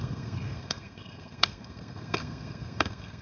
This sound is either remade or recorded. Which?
remade